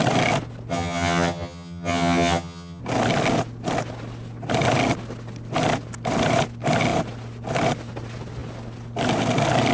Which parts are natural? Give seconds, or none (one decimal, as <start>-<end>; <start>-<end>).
0.0-0.7; 2.8-9.7